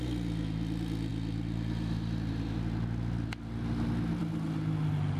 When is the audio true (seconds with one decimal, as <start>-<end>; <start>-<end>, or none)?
0.0-5.2